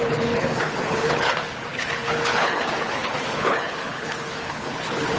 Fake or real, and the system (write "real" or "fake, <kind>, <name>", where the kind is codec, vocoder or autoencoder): fake, codec, HILCodec